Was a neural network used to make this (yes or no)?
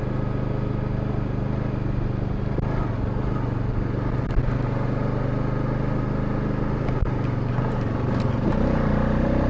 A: no